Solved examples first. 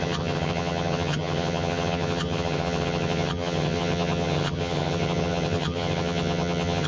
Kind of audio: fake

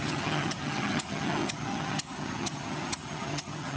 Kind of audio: fake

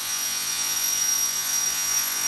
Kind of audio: fake